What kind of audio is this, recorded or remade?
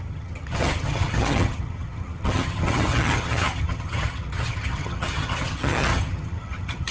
remade